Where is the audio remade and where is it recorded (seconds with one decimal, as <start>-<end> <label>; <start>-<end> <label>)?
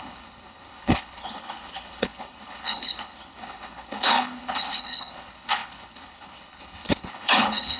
0.0-7.8 remade